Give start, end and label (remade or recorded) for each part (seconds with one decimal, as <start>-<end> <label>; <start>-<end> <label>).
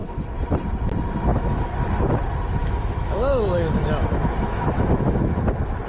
0.0-1.3 recorded; 1.3-1.8 remade; 1.8-2.6 recorded; 2.6-5.4 remade; 5.4-5.9 recorded